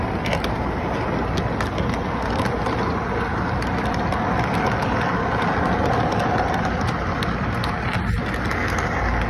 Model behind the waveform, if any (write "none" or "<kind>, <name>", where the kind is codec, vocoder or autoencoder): none